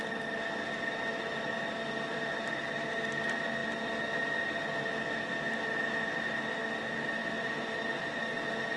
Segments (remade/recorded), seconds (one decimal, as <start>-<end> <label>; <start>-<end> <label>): 0.0-8.8 recorded